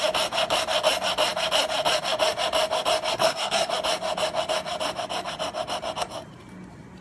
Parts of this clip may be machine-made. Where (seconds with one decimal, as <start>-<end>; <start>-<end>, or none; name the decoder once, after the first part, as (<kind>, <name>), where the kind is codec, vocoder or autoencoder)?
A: 3.1-3.7 (codec, SNAC)